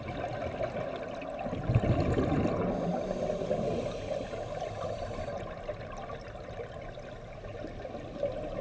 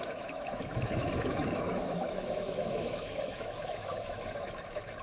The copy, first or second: second